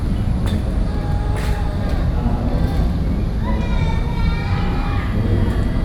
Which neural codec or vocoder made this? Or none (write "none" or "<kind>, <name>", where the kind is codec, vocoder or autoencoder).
none